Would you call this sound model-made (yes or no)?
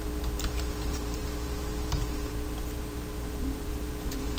yes